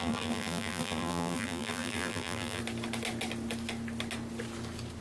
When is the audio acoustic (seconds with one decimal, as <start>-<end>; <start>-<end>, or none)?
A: 2.6-5.0